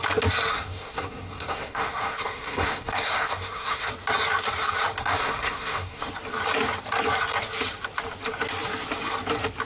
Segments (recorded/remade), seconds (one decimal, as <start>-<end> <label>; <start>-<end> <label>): 0.0-0.5 recorded; 0.5-3.9 remade; 3.9-5.0 recorded; 5.0-6.1 remade; 6.1-9.6 recorded